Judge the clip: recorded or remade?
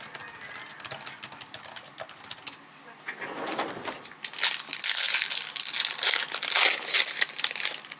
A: recorded